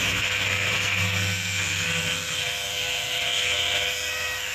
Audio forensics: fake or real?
fake